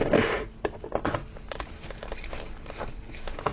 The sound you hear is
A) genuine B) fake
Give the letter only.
A